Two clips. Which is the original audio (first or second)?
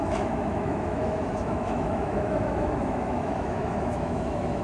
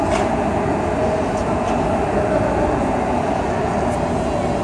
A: second